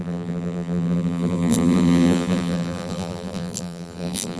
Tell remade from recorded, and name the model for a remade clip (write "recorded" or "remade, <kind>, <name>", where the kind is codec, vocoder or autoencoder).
remade, vocoder, BigVGAN v2